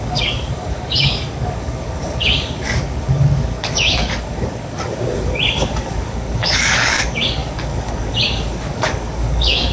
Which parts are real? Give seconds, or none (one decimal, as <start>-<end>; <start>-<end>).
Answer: none